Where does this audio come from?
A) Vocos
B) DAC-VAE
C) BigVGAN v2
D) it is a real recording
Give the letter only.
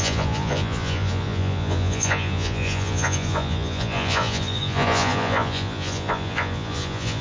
A